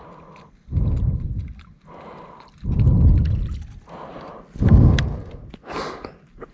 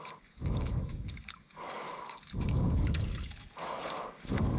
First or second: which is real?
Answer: first